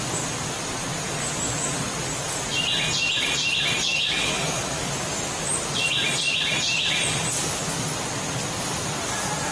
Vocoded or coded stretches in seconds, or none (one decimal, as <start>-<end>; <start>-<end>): 3.8-4.9